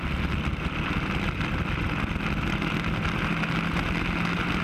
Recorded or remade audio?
recorded